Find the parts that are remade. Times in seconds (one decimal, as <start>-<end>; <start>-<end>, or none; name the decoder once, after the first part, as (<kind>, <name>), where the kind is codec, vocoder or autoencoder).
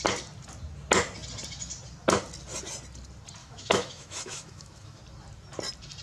3.4-5.0 (autoencoder, DAC-VAE)